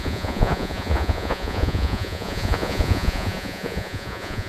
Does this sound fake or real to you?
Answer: fake